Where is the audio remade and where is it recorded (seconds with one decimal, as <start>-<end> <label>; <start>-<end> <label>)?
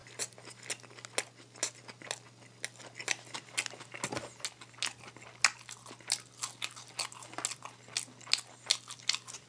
0.0-9.5 recorded